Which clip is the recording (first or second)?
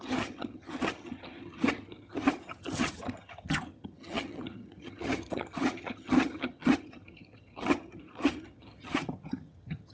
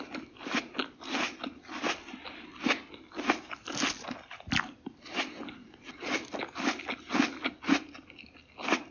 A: second